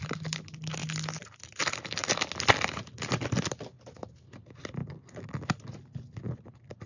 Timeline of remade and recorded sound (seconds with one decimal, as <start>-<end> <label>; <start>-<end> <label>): 0.0-6.9 recorded